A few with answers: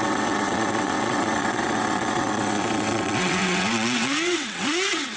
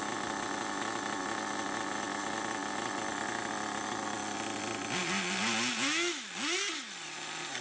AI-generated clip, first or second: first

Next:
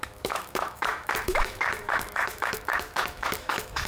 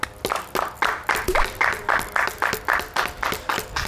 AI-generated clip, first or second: first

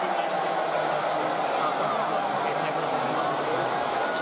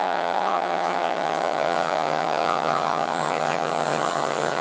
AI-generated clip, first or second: second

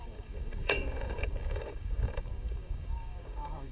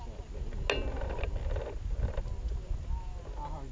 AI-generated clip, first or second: first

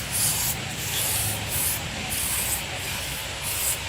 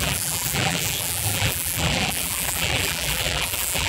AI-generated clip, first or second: second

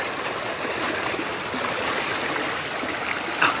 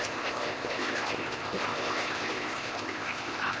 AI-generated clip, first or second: second